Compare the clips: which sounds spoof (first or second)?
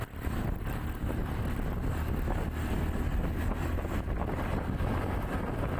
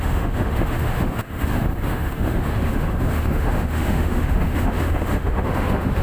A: second